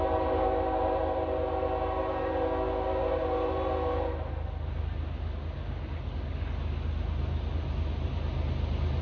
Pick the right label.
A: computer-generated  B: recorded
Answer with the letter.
B